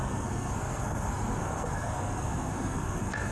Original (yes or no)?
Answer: no